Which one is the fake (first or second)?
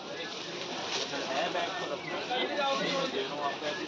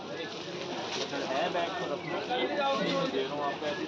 first